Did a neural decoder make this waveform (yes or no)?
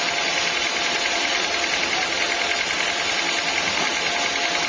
no